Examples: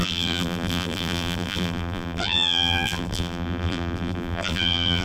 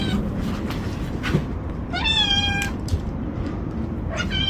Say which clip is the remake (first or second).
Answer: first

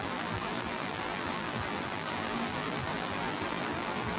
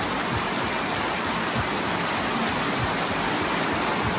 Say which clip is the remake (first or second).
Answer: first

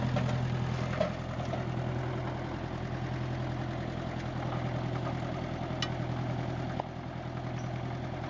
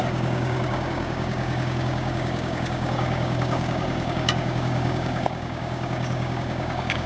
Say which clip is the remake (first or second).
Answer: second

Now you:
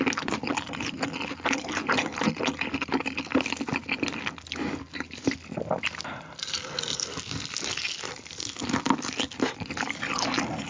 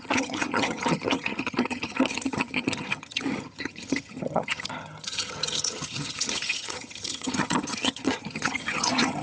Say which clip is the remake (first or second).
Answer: second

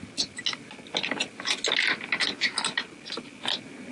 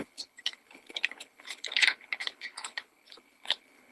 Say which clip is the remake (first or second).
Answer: second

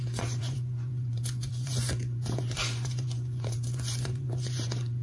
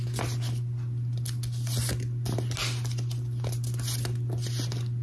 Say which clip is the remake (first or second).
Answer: first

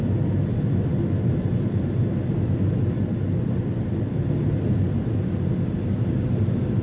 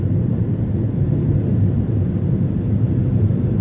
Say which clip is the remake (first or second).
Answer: second